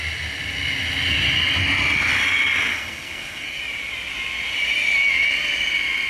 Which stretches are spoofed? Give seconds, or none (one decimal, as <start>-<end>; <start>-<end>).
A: 2.7-3.6